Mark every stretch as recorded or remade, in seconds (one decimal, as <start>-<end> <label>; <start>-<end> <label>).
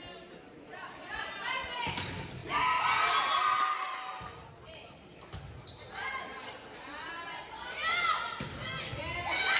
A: 0.0-9.6 recorded